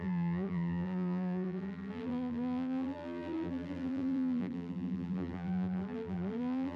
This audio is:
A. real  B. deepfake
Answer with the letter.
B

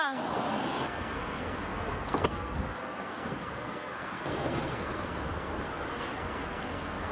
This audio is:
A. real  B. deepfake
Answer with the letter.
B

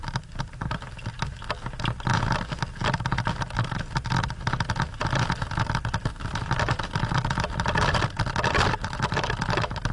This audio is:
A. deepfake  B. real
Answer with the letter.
B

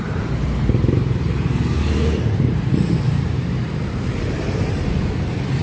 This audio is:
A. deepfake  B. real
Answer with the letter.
A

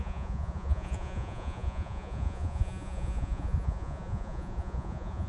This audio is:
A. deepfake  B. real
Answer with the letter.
A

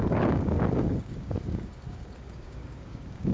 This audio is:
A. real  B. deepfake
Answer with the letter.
B